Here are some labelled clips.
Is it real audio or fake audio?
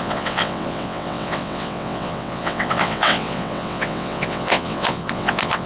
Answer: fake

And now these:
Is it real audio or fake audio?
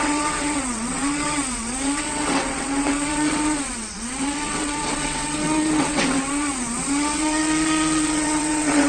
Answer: fake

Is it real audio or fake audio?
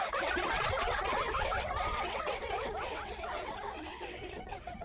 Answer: fake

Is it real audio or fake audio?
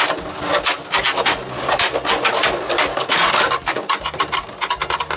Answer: real